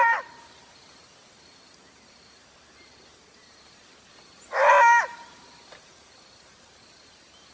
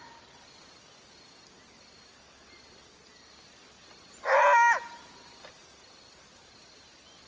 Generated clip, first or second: first